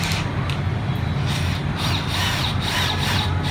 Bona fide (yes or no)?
yes